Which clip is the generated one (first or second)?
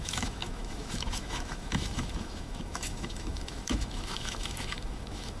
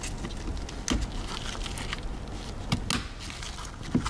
first